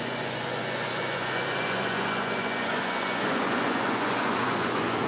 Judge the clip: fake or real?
fake